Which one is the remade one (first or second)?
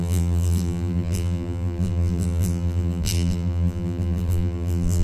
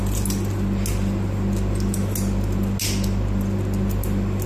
first